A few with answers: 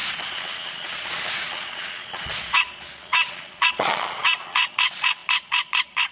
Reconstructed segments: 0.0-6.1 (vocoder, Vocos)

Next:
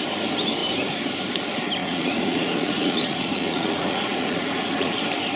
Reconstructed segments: 1.8-5.0 (vocoder, Vocos)

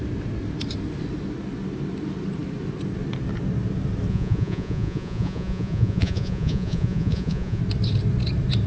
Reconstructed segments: 4.1-7.6 (vocoder, Vocos)

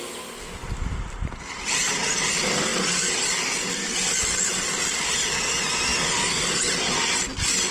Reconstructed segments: none

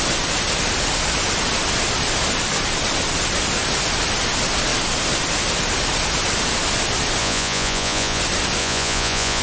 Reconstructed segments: 7.2-8.2 (vocoder, Vocos); 8.6-9.4

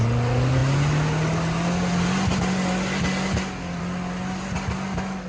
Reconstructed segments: none